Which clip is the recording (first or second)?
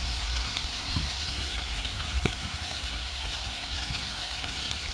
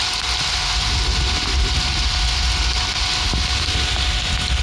second